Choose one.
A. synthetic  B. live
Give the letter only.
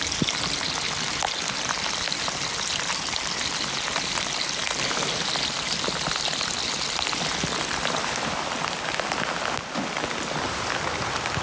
B